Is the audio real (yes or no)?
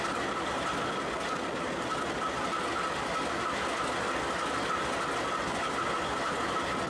yes